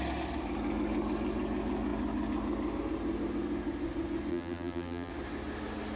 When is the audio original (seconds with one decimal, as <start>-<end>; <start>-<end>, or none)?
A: 0.0-4.3; 5.1-6.0